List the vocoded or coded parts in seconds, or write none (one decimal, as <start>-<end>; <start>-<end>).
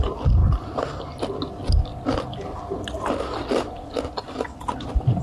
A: none